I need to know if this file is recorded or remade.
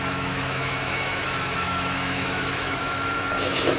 remade